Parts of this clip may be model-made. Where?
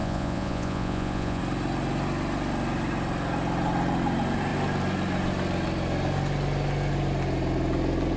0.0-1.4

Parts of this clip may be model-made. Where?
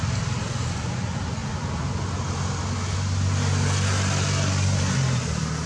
none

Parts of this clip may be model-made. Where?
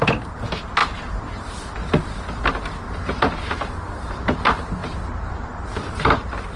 none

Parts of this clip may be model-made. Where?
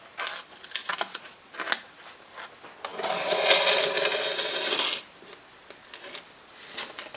0.8-1.4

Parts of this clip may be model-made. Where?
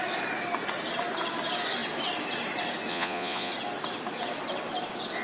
2.9-3.5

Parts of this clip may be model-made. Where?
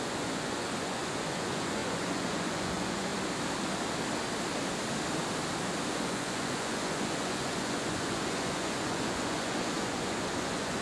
0.0-3.1; 5.9-10.8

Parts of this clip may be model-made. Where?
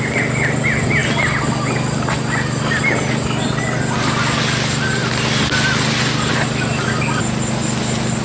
none